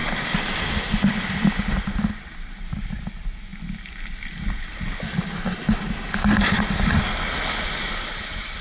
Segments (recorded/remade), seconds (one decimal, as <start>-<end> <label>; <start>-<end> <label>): 0.0-8.6 recorded